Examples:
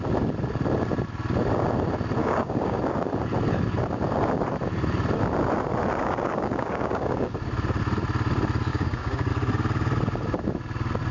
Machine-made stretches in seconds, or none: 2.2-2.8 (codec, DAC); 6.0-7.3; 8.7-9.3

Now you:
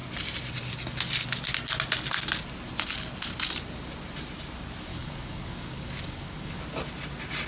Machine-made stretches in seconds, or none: 4.9-6.6 (codec, DAC)

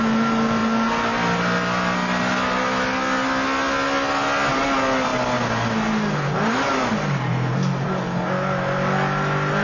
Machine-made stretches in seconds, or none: none